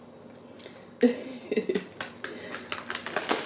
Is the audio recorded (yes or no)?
yes